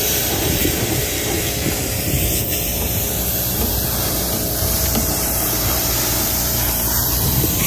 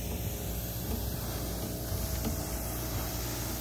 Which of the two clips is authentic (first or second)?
second